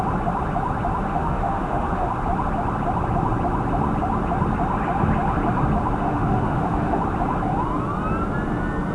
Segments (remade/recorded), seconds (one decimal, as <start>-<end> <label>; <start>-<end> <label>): 0.0-1.1 recorded; 1.1-2.1 remade; 2.1-6.0 recorded; 6.0-7.0 remade; 7.0-8.9 recorded